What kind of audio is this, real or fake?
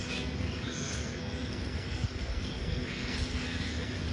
fake